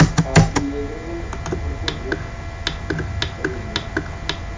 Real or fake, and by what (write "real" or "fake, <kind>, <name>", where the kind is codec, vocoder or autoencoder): real